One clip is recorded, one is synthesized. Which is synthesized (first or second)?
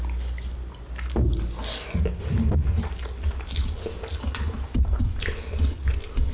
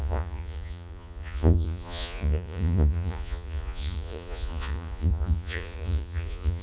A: second